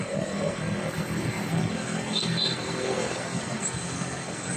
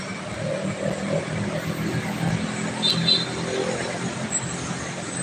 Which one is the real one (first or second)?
second